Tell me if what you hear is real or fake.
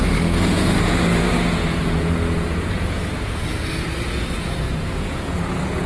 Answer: fake